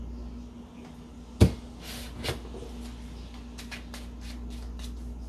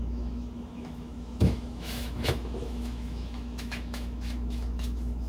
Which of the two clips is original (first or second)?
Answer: first